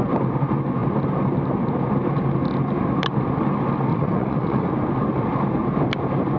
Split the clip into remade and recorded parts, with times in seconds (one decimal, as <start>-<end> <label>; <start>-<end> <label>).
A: 0.0-3.9 recorded; 3.9-4.7 remade; 4.7-6.4 recorded